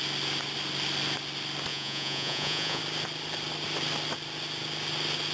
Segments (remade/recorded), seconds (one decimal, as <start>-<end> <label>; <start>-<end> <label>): 0.0-1.7 recorded; 1.7-2.8 remade; 2.8-5.3 recorded